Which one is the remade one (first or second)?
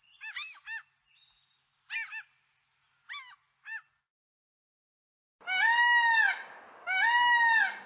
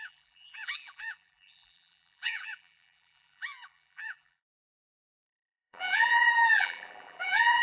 second